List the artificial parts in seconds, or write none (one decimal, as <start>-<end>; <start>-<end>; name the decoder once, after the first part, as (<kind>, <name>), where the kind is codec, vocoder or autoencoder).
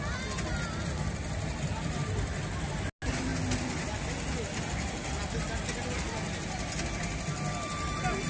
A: none